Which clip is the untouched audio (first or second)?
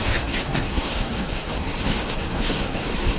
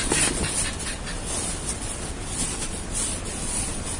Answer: second